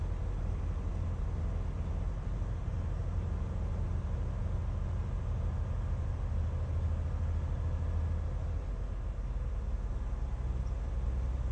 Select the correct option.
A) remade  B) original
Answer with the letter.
B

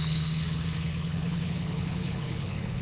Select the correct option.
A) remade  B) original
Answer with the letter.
A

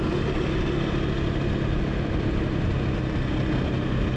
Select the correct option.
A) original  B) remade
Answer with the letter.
A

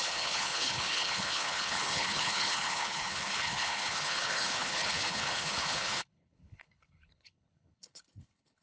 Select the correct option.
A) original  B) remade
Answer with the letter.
B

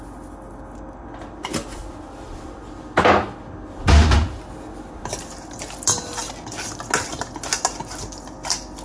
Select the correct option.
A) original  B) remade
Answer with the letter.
A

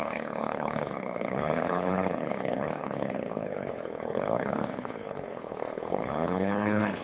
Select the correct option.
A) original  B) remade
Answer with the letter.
B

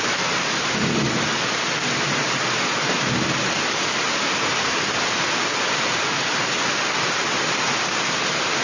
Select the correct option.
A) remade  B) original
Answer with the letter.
B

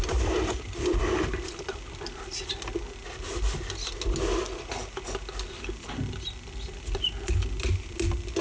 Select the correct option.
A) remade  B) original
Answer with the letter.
B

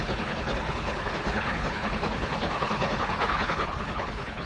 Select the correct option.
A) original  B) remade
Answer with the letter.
B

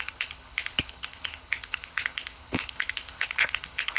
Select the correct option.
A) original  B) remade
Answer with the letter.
B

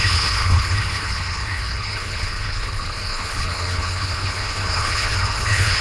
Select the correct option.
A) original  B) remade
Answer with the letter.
B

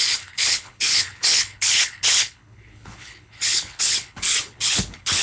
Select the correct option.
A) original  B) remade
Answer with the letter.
B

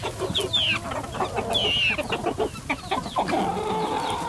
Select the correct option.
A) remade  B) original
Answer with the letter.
B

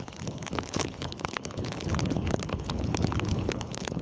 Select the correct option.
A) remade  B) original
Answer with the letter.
A